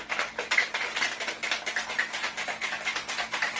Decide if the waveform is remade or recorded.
recorded